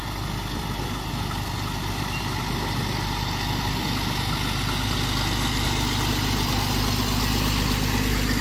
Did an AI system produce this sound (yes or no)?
no